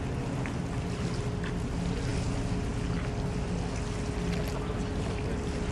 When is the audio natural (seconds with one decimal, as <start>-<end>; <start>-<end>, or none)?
0.0-5.7